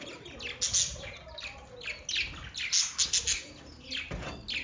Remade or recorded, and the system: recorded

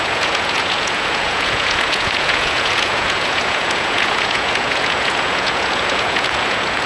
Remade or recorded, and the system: remade, vocoder, Vocos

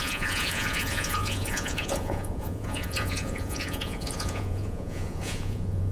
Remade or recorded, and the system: remade, vocoder, Vocos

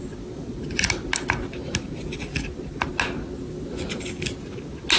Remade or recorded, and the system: recorded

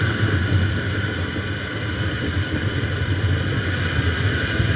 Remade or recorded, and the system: recorded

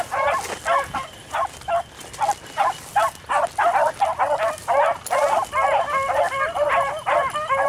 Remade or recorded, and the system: recorded